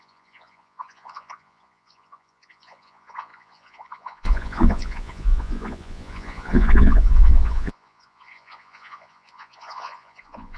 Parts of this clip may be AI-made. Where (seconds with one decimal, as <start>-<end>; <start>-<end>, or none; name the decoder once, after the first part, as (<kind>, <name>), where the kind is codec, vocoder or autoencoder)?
0.0-10.6 (vocoder, Vocos)